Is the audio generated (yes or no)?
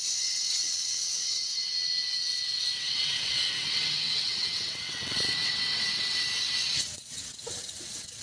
yes